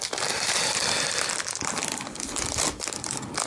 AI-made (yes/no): no